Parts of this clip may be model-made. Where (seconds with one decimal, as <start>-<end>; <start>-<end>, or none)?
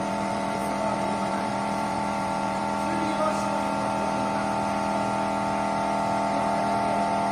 0.0-2.6